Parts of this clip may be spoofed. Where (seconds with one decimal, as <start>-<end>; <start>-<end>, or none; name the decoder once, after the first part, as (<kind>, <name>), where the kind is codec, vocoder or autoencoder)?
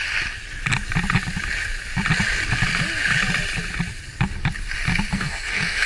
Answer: 5.1-5.9 (codec, SNAC)